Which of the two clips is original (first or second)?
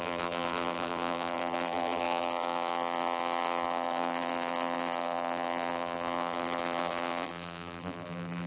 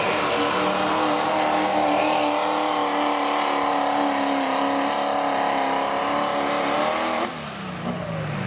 second